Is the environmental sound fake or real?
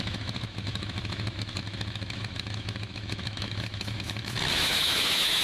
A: fake